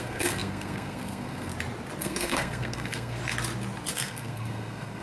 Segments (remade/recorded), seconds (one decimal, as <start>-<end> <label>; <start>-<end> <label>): 0.0-1.5 remade; 1.5-2.0 recorded; 2.0-3.2 remade; 3.2-3.9 recorded; 3.9-5.0 remade